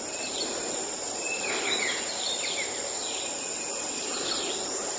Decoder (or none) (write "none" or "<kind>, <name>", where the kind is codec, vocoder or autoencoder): vocoder, BigVGAN v2